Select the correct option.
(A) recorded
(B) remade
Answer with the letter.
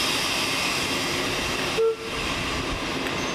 A